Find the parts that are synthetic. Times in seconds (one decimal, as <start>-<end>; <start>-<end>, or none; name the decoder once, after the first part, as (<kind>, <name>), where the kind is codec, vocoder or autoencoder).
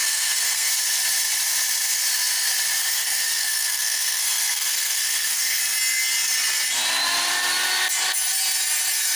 0.0-0.7 (codec, SNAC); 2.8-5.6